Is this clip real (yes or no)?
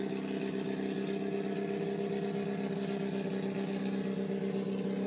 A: yes